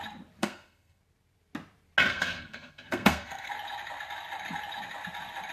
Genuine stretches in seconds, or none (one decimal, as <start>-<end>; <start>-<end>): 0.0-0.4; 1.0-2.1; 3.5-5.5